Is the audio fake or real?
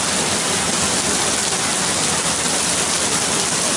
real